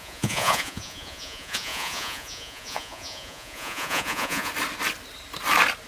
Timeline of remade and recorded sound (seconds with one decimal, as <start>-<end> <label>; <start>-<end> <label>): 0.0-4.5 remade; 4.5-5.9 recorded